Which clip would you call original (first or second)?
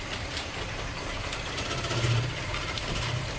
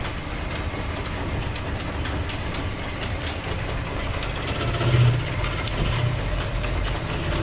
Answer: second